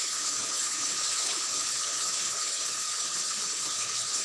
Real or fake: fake